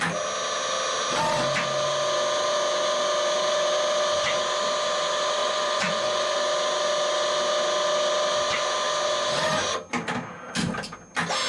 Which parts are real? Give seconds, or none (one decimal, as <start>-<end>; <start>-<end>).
0.0-5.4; 6.4-11.5